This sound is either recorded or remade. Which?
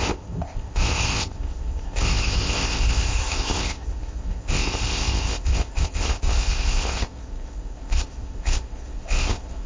remade